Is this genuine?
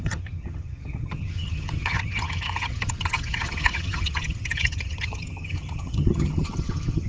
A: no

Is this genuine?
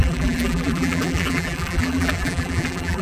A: no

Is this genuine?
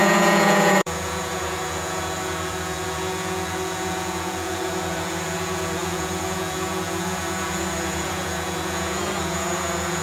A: no